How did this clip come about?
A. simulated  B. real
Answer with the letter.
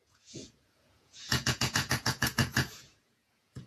A